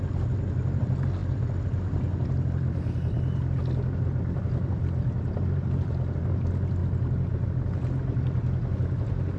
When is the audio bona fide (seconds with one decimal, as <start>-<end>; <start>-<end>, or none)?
0.0-9.4